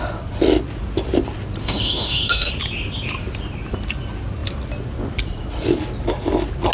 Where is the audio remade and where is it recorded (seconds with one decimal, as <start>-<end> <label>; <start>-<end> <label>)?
0.0-1.6 recorded; 1.6-2.5 remade; 2.5-6.7 recorded